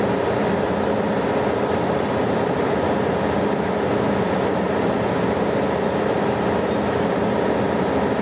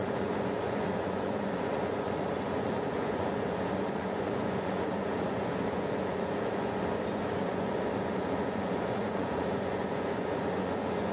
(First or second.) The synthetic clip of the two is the second